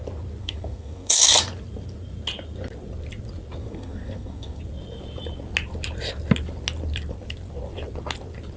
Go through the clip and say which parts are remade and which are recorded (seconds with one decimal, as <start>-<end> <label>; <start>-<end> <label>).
0.0-0.4 recorded; 0.4-1.4 remade; 1.4-3.6 recorded; 3.6-4.6 remade; 4.6-8.6 recorded